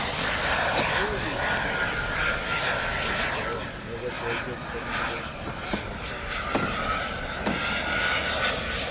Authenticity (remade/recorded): recorded